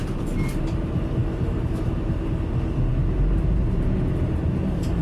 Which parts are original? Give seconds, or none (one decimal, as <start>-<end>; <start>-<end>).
0.0-1.2; 1.8-5.0